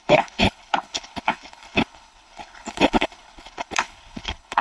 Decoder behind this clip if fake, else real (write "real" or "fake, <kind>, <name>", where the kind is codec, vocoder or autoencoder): fake, codec, HILCodec